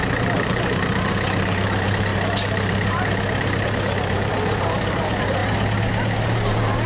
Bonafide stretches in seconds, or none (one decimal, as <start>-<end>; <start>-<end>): 5.4-6.2